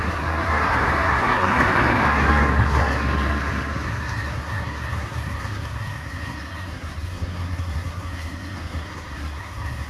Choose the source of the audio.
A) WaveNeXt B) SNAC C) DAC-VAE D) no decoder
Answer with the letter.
B